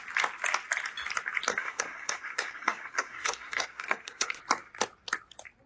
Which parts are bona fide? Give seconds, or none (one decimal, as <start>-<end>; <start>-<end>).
0.0-1.5; 4.4-5.7

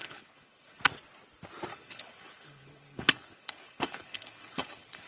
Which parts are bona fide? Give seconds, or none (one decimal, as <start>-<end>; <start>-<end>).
0.8-1.7

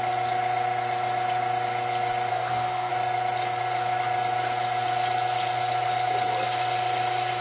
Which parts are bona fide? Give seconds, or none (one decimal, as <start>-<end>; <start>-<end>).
0.0-2.3; 2.9-7.4

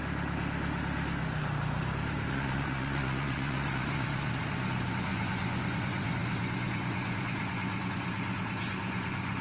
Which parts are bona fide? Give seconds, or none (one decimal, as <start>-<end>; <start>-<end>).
0.0-2.3

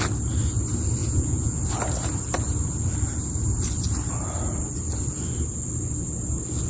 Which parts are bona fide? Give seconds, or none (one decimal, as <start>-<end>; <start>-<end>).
0.0-1.0; 1.6-6.7

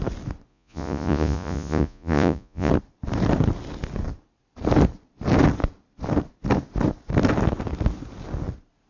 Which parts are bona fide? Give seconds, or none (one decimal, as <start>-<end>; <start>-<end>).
0.0-0.5; 2.7-8.9

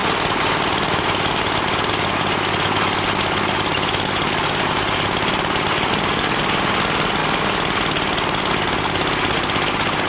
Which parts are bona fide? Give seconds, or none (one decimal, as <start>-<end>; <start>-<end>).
0.0-10.1